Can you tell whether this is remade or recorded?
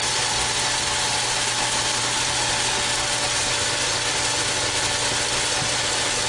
recorded